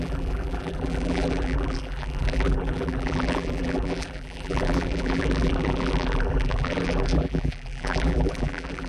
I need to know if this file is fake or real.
fake